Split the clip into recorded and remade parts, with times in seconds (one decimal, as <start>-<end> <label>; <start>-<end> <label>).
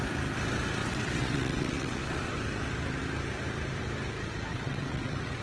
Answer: 0.0-0.8 recorded; 0.8-2.3 remade; 2.3-4.5 recorded; 4.5-5.4 remade